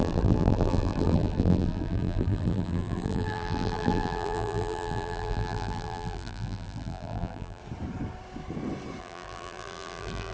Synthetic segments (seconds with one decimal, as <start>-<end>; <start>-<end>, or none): 0.0-7.6; 9.0-10.3